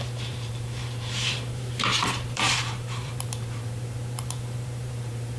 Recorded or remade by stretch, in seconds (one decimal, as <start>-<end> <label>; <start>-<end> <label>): 0.0-5.4 remade